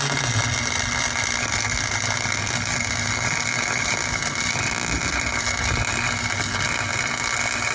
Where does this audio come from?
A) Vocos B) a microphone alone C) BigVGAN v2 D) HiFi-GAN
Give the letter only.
B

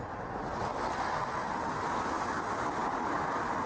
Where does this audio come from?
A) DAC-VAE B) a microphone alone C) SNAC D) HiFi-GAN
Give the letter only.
B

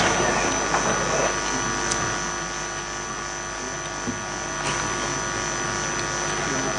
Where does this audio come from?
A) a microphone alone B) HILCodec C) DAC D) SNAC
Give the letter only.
A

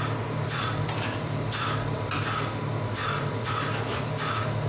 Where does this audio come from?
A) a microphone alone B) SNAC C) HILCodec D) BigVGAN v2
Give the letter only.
D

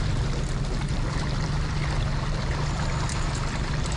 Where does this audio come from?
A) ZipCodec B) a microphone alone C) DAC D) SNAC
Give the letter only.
B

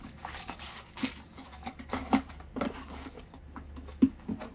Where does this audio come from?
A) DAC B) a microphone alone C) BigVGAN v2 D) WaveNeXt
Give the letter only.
A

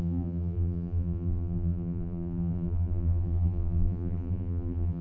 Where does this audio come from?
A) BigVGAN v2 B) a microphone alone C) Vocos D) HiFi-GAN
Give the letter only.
A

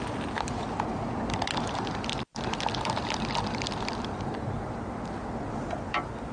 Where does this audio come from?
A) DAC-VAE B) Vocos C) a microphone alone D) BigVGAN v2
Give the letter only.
D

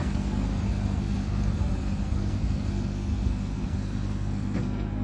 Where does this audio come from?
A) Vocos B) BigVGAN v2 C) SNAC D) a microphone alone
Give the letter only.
C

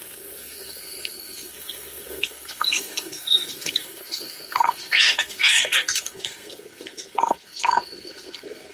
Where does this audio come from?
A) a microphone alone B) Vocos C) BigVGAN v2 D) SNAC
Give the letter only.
D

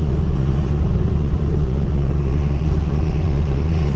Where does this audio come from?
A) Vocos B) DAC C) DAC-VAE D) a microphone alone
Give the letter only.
A